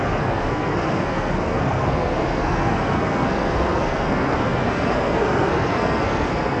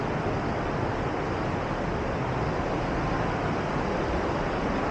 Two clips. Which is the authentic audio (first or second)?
second